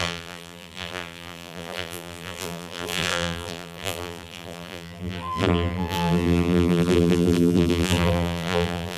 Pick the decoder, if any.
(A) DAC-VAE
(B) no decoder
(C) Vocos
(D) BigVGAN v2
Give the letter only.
D